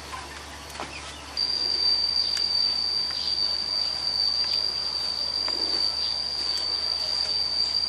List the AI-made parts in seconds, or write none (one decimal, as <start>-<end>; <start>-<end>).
1.9-2.5